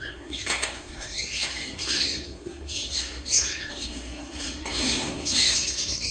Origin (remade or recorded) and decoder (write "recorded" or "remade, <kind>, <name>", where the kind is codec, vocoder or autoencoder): remade, codec, SNAC